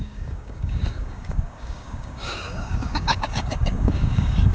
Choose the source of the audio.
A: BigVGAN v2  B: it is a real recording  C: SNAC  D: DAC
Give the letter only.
D